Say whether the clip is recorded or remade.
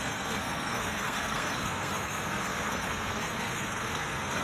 remade